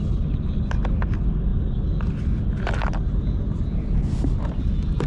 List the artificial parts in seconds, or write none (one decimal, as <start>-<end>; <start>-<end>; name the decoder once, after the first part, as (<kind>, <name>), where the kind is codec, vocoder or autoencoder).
none